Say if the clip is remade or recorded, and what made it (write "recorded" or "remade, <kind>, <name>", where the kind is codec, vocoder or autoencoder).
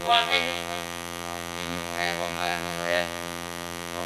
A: remade, vocoder, BigVGAN v2